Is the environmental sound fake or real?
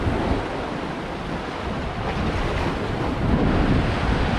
real